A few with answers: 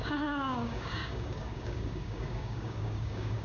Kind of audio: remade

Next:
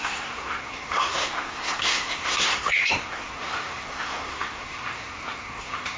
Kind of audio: remade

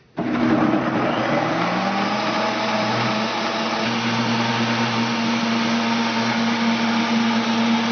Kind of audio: recorded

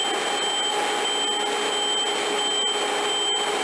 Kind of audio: recorded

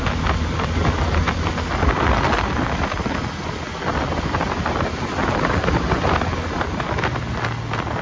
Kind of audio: recorded